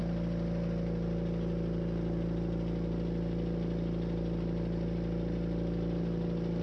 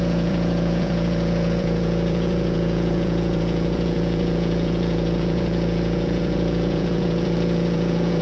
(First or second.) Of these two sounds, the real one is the first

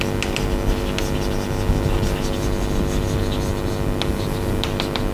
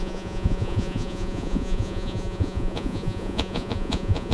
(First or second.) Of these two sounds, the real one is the first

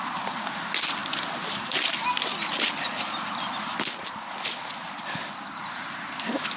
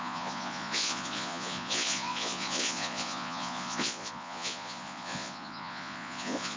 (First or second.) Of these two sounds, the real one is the first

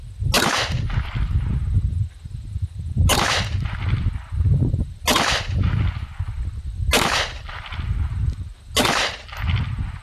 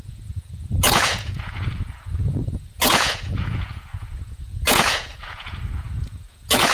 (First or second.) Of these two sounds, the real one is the first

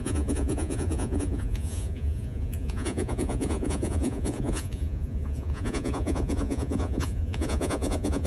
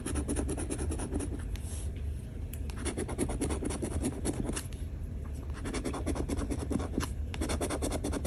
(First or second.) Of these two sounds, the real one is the second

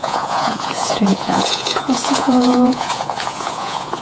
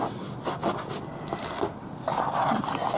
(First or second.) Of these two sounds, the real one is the second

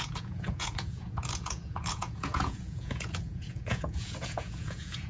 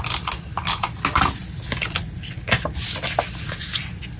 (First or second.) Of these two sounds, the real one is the second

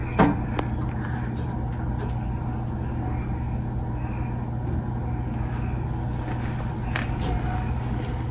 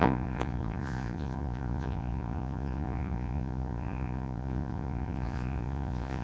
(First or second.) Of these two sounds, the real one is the first